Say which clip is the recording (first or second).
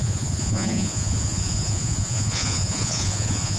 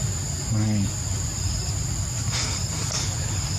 second